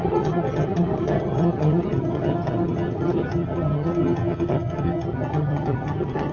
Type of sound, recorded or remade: remade